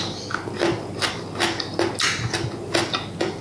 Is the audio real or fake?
real